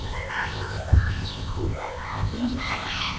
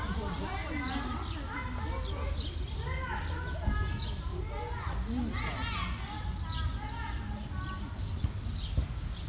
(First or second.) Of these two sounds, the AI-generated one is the first